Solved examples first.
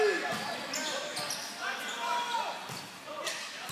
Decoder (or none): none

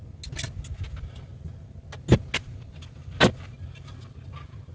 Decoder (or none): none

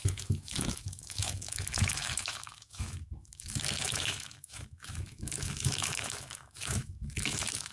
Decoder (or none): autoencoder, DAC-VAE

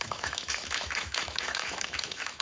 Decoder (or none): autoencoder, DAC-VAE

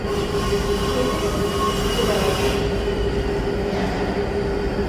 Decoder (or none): none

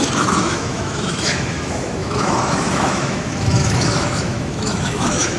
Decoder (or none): autoencoder, DAC-VAE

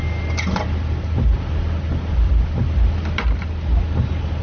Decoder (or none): none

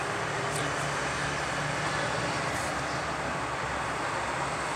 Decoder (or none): none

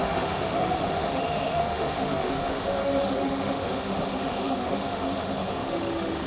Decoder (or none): autoencoder, DAC-VAE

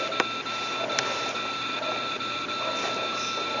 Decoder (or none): none